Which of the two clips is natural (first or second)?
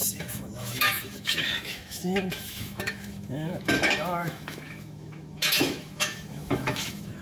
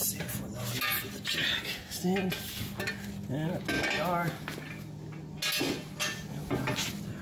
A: second